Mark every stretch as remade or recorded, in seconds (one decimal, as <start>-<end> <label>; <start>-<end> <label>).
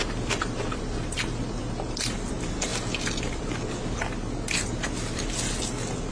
0.0-6.1 recorded